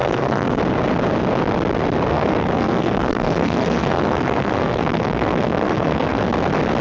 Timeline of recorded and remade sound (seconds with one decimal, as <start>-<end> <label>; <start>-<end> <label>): 0.0-0.6 remade; 0.6-2.1 recorded; 2.1-6.2 remade; 6.2-6.8 recorded